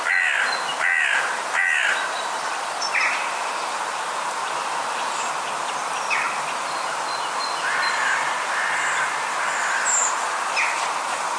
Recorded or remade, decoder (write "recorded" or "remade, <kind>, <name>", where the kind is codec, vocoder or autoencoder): recorded